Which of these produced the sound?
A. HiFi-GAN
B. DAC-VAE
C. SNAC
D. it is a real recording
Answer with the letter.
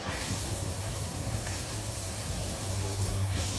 C